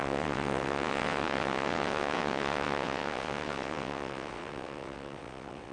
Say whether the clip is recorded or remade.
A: remade